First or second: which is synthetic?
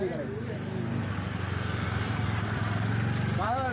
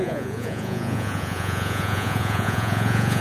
second